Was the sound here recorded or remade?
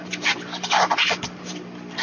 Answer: recorded